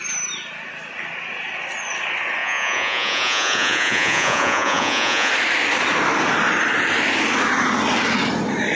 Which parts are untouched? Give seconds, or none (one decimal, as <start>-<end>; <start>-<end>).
0.0-2.4; 5.3-8.7